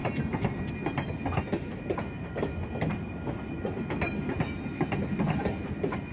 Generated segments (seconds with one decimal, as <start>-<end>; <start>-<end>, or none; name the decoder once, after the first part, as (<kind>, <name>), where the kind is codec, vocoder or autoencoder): none